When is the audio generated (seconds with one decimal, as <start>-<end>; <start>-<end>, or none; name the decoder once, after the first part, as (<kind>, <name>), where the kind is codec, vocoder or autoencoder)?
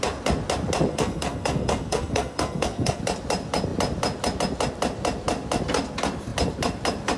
0.9-3.0 (codec, SNAC)